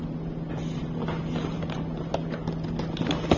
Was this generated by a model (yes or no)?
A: no